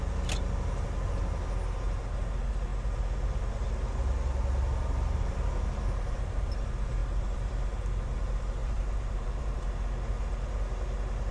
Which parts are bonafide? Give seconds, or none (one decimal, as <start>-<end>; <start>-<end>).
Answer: 0.0-8.6; 9.6-11.3